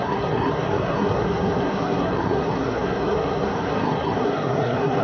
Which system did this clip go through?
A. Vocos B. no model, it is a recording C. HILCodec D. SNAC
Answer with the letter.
D